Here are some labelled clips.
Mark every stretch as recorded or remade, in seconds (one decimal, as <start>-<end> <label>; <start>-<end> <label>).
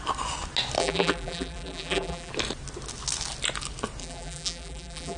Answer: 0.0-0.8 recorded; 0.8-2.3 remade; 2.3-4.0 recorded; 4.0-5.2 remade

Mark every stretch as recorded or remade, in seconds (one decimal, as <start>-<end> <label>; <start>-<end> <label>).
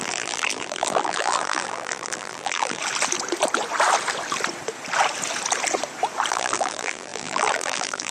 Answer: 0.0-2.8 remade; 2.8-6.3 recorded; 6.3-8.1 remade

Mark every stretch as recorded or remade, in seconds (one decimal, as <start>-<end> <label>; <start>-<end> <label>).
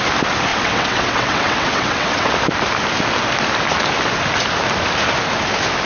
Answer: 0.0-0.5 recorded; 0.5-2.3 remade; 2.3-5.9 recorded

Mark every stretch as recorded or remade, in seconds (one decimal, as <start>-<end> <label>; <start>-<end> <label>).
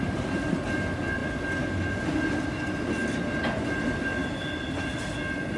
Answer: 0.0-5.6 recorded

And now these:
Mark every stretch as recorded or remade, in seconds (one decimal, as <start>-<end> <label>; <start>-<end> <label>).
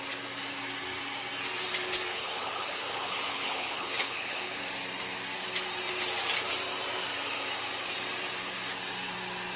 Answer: 0.0-2.1 recorded; 2.1-4.6 remade; 4.6-9.6 recorded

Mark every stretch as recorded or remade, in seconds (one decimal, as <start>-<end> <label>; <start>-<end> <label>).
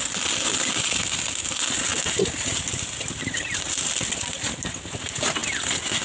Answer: 0.0-6.0 recorded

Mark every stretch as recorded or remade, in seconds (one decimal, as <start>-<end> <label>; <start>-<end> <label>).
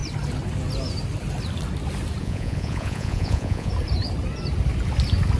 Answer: 0.0-2.2 recorded; 2.2-3.7 remade; 3.7-5.4 recorded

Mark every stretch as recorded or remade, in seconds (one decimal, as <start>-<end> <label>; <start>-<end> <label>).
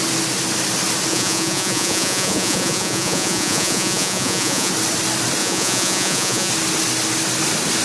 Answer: 0.0-1.1 recorded; 1.1-4.7 remade; 4.7-5.4 recorded; 5.4-6.5 remade; 6.5-7.8 recorded